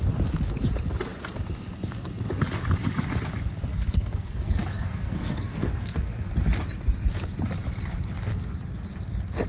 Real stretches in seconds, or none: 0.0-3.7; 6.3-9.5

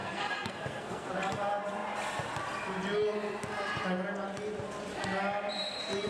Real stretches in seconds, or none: 1.1-6.1